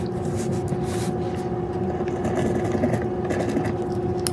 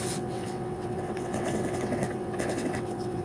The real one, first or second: first